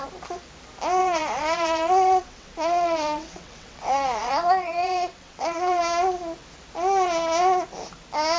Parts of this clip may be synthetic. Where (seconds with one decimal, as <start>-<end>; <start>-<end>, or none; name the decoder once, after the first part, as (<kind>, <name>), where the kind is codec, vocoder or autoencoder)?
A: 1.0-5.8 (vocoder, WaveNeXt)